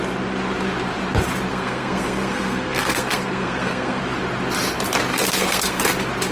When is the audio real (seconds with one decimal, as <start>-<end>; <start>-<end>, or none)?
0.0-1.5; 4.0-5.1; 5.8-6.3